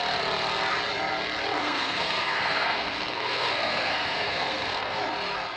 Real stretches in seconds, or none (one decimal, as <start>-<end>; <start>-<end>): 0.0-1.6; 5.0-5.6